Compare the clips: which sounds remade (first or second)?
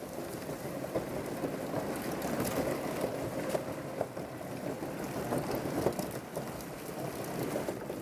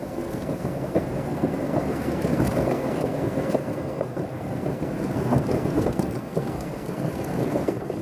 second